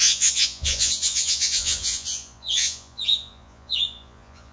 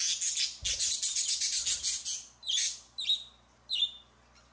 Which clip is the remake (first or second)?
first